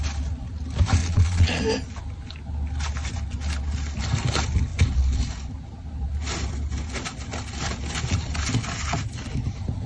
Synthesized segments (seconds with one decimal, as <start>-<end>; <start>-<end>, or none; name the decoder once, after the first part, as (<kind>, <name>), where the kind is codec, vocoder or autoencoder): 1.0-1.6 (vocoder, Vocos)